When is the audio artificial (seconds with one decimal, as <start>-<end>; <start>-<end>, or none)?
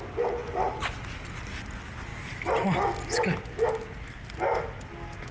none